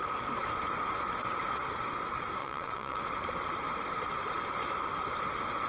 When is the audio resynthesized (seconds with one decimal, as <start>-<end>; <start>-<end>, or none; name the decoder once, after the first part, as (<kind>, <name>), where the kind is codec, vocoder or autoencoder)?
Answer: 2.4-3.0 (vocoder, WaveNeXt)

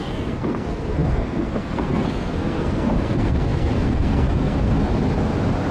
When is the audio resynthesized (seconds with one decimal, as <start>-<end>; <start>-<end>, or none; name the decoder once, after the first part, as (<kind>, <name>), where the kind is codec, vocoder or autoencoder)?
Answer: 0.0-4.9 (codec, SNAC)

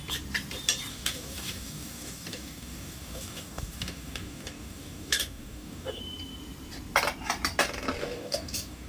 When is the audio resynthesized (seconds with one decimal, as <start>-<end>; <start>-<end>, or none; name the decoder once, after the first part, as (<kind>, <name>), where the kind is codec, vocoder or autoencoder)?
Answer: 0.9-6.0 (codec, DAC); 8.0-8.9

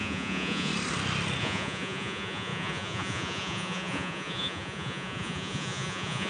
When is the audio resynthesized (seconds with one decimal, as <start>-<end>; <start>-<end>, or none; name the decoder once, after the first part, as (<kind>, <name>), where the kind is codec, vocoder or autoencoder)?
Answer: 0.0-0.7 (vocoder, Vocos); 1.4-6.3

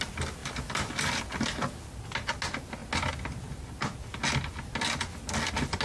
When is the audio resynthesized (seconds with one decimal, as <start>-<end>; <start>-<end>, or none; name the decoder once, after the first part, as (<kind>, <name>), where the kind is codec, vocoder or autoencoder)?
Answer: 0.4-1.2 (vocoder, BigVGAN v2)

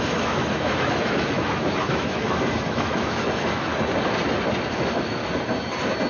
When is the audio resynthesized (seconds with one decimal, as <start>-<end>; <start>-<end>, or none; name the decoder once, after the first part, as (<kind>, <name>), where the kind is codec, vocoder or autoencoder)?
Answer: 0.0-3.7 (autoencoder, DAC-VAE); 4.7-5.2

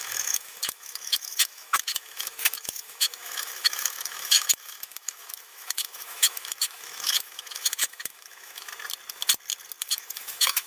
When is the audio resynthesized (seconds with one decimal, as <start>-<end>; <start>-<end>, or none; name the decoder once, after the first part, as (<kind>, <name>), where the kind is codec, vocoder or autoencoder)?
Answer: 0.0-8.7 (autoencoder, DAC-VAE); 9.8-10.7